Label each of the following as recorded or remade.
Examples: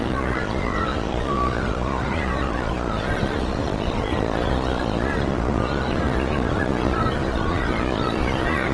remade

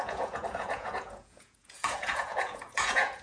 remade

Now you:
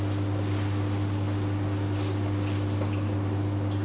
recorded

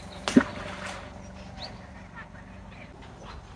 recorded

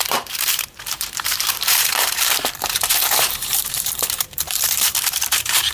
remade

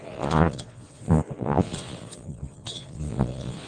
remade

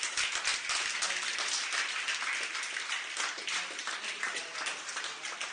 recorded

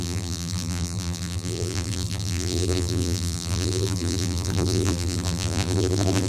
remade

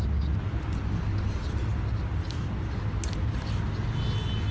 recorded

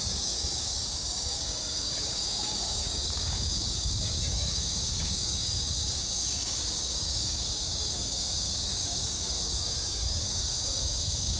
remade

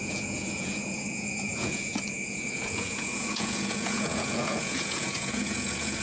remade